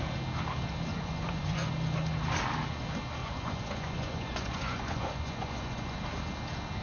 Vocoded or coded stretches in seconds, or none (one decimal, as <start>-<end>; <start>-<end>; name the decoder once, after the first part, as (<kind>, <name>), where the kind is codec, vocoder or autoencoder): 0.9-1.7 (vocoder, Vocos); 3.2-6.0